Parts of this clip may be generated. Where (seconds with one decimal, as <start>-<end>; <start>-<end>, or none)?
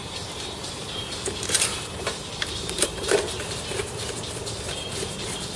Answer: 0.0-3.4